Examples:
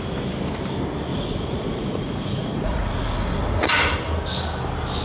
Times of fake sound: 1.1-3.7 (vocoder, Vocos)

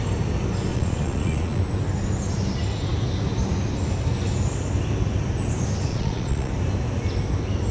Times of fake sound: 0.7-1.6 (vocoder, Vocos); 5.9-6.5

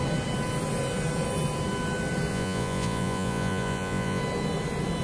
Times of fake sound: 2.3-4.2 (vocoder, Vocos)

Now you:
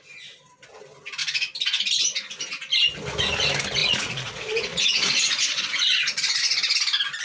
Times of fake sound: 3.8-6.4 (vocoder, Vocos)